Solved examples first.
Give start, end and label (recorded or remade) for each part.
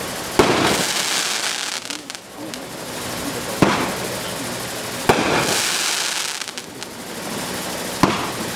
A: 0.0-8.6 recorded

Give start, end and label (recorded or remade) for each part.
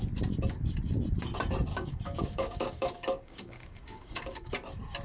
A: 0.0-1.7 recorded; 1.7-4.5 remade; 4.5-5.0 recorded